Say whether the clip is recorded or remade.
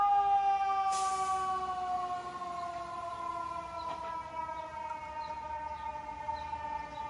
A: recorded